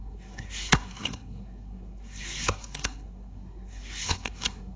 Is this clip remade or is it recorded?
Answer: remade